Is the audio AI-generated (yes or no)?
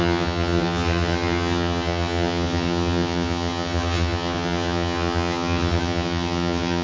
yes